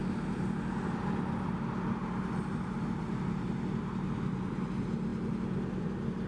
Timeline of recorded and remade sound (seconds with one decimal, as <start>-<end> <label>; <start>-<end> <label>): 0.0-2.0 recorded; 2.0-3.5 remade; 3.5-6.3 recorded